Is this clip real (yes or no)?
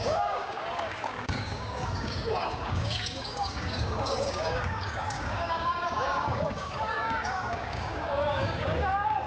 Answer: no